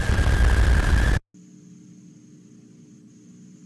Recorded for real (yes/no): yes